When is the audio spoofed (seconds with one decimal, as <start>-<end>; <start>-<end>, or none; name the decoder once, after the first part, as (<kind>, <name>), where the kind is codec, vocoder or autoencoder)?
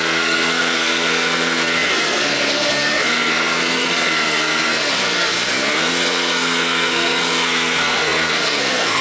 0.0-9.0 (codec, SNAC)